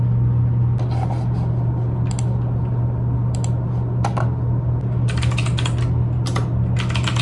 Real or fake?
real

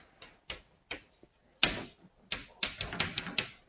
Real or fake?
real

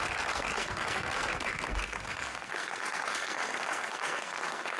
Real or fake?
fake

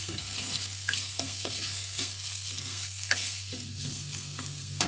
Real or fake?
fake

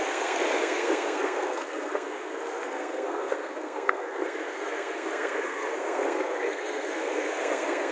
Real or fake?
fake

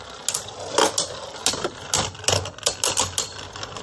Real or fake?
real